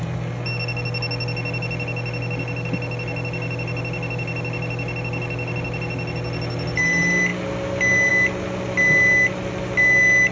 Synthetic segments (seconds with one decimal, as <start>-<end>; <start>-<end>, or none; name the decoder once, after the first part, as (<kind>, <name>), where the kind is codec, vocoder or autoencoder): none